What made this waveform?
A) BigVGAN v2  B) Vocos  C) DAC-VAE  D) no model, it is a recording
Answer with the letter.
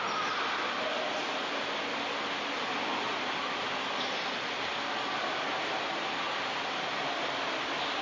D